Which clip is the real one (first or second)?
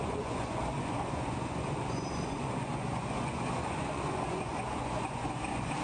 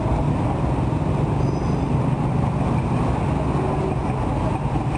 second